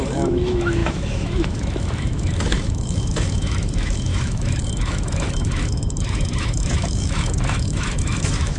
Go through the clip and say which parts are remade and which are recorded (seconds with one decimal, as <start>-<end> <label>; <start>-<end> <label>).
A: 0.0-8.6 remade